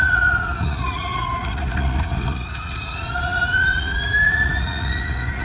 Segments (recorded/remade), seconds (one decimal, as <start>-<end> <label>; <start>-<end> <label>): 0.0-5.4 remade